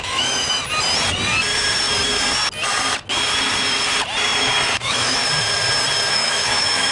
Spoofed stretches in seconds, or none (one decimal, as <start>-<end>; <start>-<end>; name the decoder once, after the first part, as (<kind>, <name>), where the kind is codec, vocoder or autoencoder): 0.0-0.6 (autoencoder, DAC-VAE); 4.7-5.2; 6.1-6.9